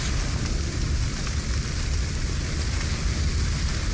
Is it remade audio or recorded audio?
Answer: recorded